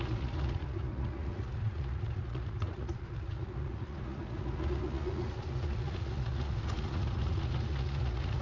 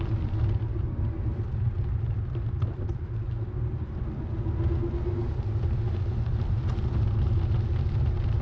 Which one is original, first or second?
second